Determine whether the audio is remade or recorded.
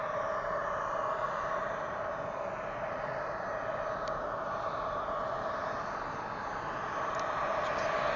recorded